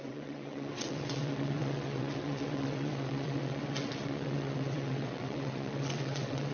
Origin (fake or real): fake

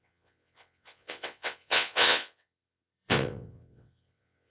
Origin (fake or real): fake